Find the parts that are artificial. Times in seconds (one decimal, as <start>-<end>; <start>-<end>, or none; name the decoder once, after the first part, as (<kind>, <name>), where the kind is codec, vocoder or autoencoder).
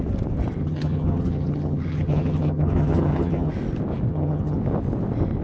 0.6-3.5 (vocoder, HiFi-GAN); 4.1-4.6